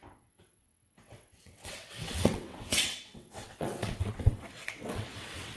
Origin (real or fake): fake